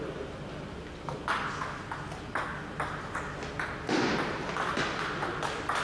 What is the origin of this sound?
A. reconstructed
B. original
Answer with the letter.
B